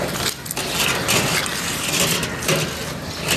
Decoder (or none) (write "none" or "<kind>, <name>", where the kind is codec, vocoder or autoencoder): none